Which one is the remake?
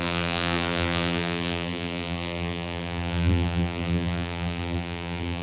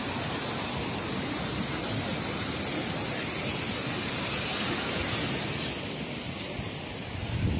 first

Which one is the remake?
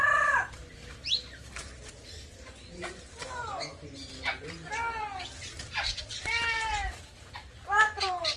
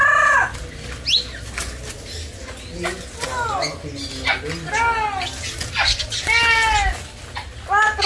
first